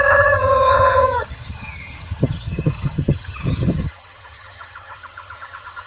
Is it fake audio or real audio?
fake